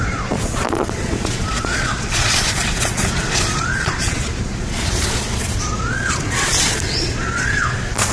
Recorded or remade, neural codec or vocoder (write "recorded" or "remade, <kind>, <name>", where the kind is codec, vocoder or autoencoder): remade, vocoder, Vocos